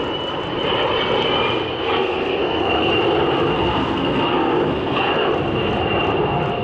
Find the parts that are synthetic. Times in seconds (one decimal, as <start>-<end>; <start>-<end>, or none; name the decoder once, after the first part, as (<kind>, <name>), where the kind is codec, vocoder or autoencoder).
1.7-2.9 (codec, SNAC); 3.5-5.3